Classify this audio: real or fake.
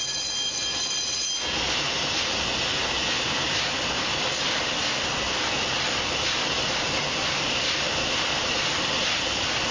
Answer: real